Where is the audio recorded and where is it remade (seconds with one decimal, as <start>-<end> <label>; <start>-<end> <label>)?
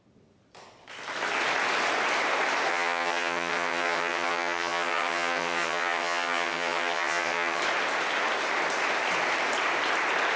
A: 0.0-2.7 recorded; 2.7-7.6 remade; 7.6-10.4 recorded